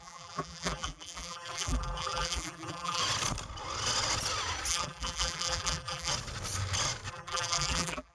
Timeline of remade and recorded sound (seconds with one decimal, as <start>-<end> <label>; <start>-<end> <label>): 0.0-3.0 remade; 3.0-4.7 recorded; 4.7-6.1 remade; 6.1-7.1 recorded; 7.1-8.1 remade